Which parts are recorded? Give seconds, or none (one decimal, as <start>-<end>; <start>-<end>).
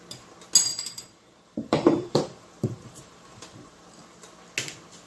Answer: 0.0-0.7; 3.8-5.1